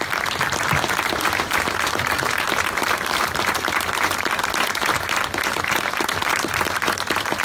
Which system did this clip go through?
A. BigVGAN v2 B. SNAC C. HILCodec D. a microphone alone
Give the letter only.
A